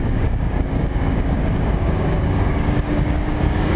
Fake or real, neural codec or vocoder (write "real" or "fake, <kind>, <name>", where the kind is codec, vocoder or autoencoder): fake, codec, DAC